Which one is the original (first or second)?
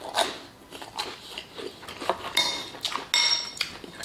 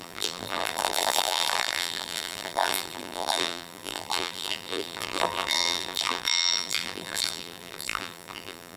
first